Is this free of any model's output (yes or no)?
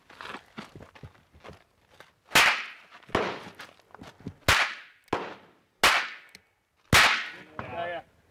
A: yes